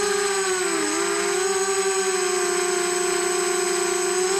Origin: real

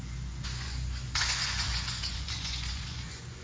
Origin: fake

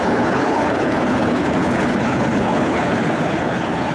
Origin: fake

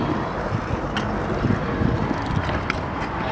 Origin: real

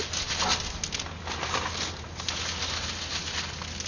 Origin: real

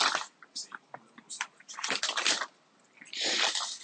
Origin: real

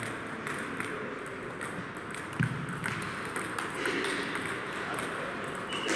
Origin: real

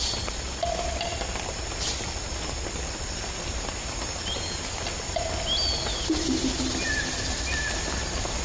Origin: real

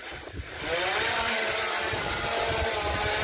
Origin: real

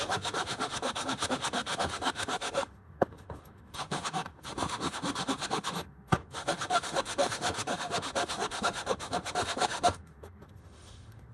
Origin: fake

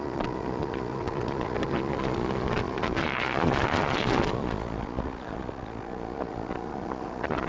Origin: fake